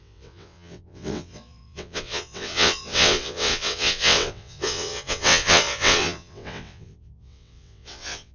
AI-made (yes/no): yes